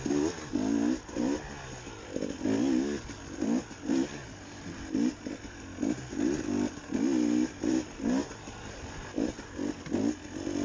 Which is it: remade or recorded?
recorded